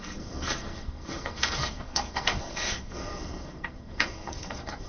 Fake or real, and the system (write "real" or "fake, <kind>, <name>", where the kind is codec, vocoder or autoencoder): fake, codec, SNAC